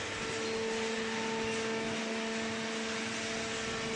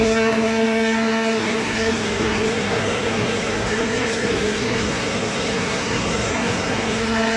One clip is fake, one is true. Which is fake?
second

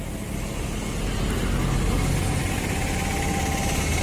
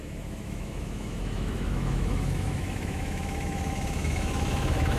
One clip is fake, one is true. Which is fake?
second